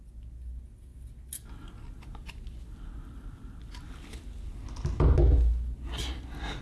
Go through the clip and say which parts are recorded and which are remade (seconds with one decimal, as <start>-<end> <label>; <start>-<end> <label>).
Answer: 0.0-6.6 recorded